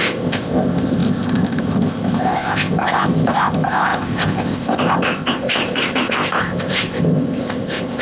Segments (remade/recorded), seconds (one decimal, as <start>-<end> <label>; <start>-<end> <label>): 0.0-8.0 remade